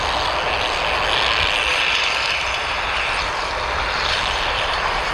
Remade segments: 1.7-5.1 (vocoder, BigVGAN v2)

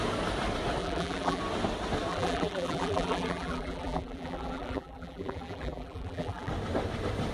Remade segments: 0.8-1.4 (vocoder, BigVGAN v2); 2.1-6.5